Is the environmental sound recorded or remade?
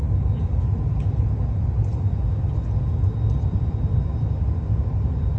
recorded